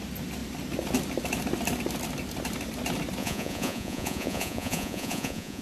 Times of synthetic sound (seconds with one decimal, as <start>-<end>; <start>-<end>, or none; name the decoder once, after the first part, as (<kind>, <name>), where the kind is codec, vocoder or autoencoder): 3.2-5.6 (vocoder, Vocos)